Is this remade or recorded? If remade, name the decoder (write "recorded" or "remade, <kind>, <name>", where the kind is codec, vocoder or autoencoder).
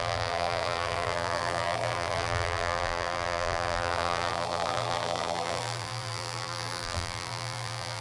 remade, vocoder, BigVGAN v2